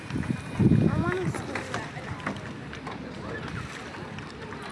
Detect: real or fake real